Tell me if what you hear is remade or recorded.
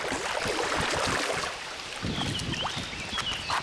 recorded